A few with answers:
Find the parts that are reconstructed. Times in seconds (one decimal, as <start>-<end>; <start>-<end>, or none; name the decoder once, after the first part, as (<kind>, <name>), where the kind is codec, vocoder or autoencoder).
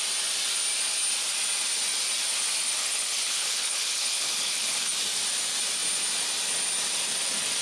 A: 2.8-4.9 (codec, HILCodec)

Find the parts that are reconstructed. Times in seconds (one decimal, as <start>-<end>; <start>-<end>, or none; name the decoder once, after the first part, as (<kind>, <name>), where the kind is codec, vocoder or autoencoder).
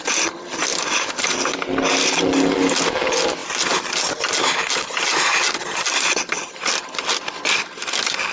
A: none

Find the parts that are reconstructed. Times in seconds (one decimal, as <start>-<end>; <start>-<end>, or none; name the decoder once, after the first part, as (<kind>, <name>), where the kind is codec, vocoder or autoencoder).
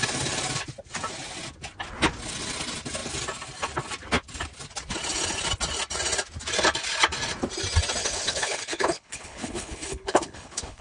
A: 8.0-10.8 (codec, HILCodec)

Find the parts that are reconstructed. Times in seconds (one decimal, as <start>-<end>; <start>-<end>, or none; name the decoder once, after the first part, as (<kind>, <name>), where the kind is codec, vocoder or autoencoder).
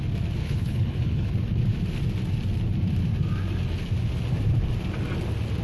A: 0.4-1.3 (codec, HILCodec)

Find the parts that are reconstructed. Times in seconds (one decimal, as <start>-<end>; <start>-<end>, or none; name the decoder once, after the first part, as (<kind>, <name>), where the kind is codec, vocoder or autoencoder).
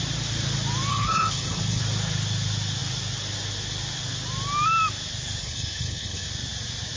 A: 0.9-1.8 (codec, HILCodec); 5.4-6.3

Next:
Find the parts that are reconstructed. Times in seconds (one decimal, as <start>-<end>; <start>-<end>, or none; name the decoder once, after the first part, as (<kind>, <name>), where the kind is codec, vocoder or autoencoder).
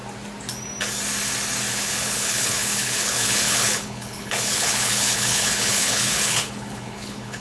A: 1.7-7.4 (codec, HILCodec)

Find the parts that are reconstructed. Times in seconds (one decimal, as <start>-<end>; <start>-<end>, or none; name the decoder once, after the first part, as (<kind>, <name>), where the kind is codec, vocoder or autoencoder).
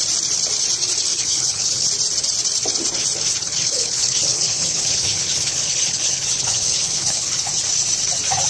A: 1.1-1.9 (codec, HILCodec); 3.4-7.5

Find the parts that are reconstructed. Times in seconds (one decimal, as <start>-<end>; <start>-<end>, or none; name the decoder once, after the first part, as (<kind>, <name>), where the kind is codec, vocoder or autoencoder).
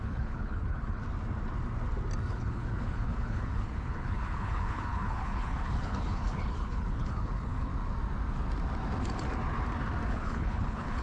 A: 0.0-1.0 (codec, HILCodec); 2.3-7.7; 10.1-11.0